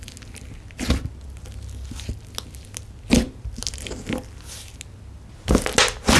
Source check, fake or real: real